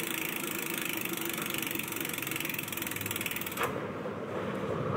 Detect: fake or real real